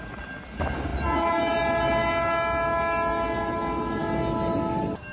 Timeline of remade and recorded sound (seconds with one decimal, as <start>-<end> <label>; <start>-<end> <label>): 0.0-5.1 recorded